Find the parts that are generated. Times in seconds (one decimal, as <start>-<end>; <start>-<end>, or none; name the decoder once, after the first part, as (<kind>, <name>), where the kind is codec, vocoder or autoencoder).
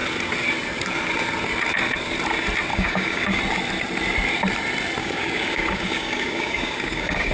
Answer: 2.7-3.4 (codec, DAC); 5.0-7.3